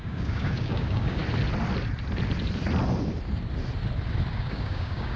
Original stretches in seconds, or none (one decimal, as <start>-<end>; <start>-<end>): 1.2-4.3